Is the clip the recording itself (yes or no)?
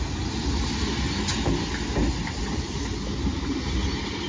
yes